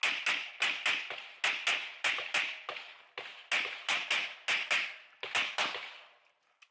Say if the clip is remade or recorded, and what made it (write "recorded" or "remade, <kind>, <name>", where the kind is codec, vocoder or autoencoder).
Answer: recorded